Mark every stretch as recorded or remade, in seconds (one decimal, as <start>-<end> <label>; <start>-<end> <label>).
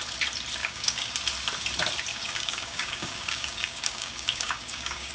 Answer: 0.0-0.6 recorded; 0.6-1.1 remade; 1.1-2.1 recorded; 2.1-5.1 remade